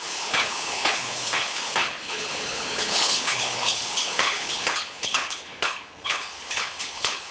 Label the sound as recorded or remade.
remade